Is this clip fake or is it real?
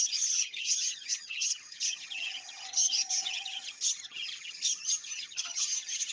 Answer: fake